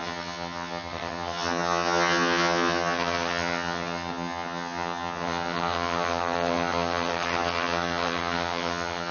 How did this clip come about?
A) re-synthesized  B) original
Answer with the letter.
A